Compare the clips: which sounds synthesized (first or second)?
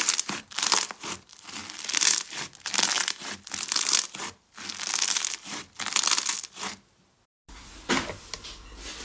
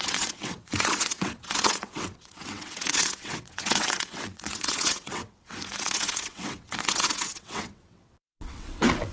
second